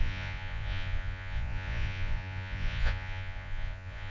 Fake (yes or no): yes